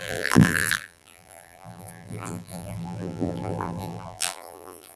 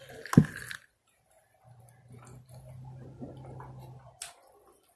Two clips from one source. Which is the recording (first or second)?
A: second